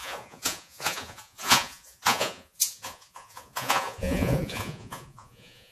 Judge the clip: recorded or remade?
remade